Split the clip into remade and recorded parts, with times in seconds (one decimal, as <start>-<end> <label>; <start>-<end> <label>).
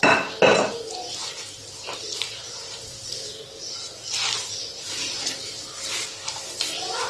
0.0-1.6 recorded; 1.6-3.1 remade; 3.1-7.1 recorded